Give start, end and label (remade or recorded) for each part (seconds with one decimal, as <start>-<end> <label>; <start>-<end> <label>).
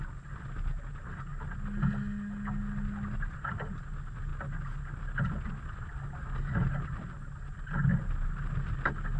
0.0-9.2 recorded